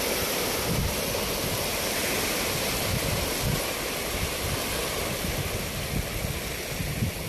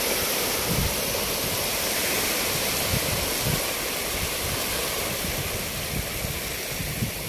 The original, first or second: first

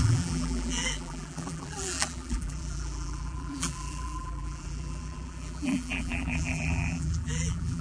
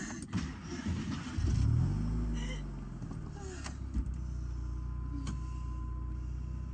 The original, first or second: second